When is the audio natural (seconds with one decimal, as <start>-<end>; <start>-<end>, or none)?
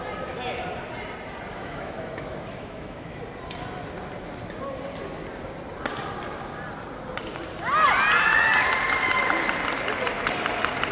0.0-1.5; 3.2-10.9